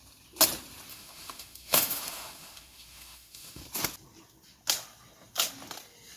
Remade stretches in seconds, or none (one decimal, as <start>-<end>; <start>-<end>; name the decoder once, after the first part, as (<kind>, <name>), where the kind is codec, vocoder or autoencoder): 0.9-3.6 (autoencoder, DAC-VAE)